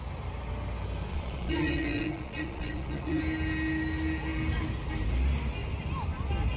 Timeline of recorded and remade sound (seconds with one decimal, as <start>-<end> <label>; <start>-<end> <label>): 0.0-1.1 recorded; 1.1-3.2 remade; 3.2-6.6 recorded